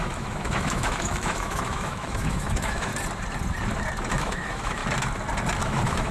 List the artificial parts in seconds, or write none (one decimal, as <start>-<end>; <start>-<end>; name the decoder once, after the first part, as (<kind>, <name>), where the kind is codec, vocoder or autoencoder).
0.0-2.9 (autoencoder, DAC-VAE); 4.1-4.8; 5.6-6.1